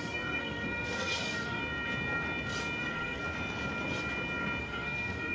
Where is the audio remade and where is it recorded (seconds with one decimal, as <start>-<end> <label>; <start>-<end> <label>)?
0.0-1.6 remade; 1.6-2.8 recorded; 2.8-3.2 remade; 3.2-4.6 recorded; 4.6-5.3 remade